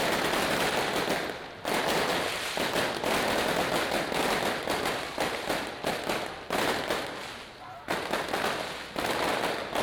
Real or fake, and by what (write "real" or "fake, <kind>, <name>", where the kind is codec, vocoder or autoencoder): real